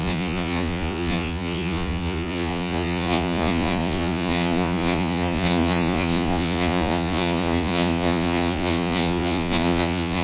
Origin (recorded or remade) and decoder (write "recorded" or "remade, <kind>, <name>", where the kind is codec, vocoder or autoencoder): remade, vocoder, Vocos